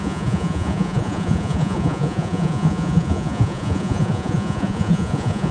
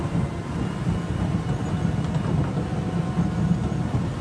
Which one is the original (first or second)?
second